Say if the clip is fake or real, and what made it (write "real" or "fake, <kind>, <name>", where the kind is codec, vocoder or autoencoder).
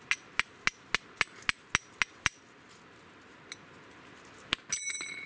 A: real